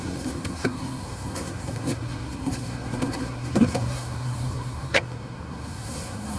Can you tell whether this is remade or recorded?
remade